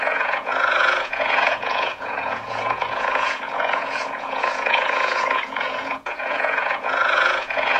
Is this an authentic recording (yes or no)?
no